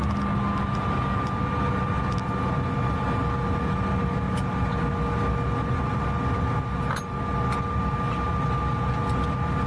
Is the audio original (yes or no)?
yes